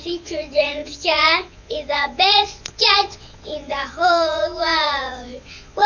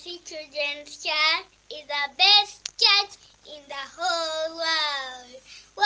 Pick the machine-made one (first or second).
first